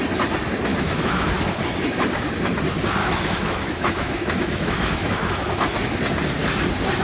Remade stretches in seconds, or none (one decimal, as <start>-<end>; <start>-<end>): 0.7-1.4; 3.0-5.6